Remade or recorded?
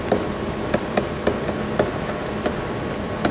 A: recorded